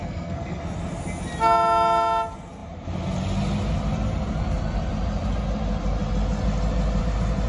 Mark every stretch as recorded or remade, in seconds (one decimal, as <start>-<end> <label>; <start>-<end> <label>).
0.0-0.6 remade; 0.6-7.5 recorded